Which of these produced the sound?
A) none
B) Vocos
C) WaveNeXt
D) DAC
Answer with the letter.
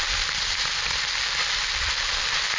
A